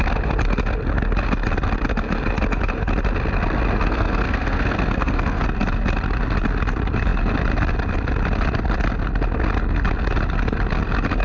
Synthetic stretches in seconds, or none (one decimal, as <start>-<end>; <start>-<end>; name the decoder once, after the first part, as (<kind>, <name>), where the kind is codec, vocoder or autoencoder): 3.9-5.4 (codec, SNAC)